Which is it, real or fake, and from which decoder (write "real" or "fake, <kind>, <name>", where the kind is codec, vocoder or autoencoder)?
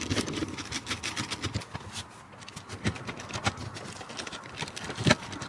real